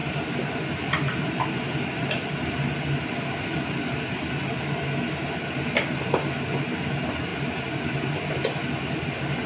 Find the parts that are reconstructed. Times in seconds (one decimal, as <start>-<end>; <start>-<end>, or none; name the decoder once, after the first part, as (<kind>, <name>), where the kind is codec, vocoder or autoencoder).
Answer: none